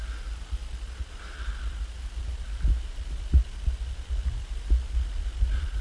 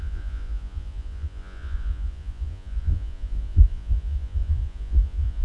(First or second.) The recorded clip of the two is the first